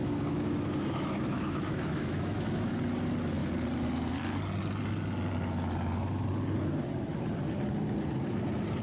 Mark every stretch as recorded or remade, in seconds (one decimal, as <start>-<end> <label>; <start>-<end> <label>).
0.0-2.7 remade; 2.7-8.8 recorded